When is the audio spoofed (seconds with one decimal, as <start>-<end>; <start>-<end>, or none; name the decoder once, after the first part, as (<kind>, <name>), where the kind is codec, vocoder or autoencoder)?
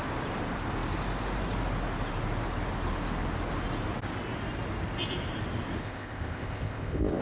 5.8-7.2 (codec, ZipCodec)